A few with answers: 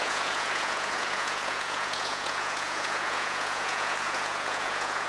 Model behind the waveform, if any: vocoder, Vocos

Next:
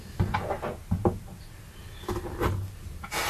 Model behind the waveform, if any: none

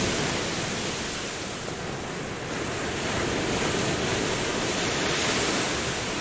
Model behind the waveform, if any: none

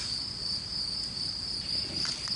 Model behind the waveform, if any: none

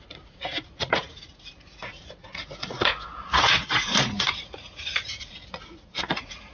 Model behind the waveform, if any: vocoder, Vocos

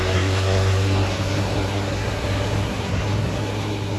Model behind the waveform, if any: codec, SNAC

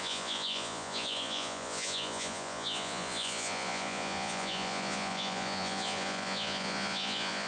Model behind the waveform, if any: vocoder, Vocos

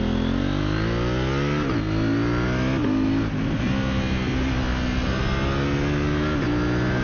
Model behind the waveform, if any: none